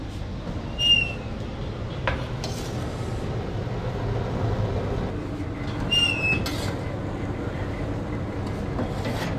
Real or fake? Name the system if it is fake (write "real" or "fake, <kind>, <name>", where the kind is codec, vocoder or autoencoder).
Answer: real